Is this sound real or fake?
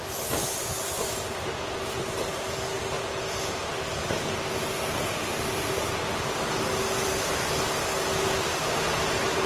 real